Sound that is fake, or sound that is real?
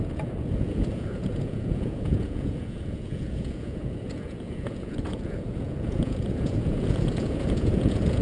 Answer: fake